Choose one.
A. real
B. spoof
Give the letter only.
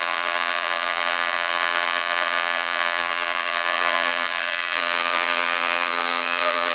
B